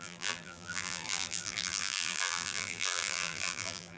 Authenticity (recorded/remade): remade